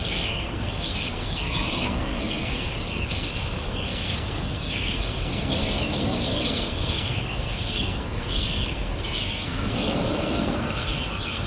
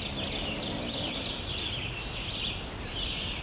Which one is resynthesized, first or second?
first